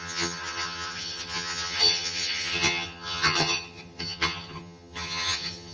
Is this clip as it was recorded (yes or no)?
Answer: no